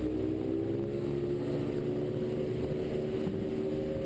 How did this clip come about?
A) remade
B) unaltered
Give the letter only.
B